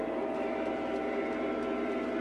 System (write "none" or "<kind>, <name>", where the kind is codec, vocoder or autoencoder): none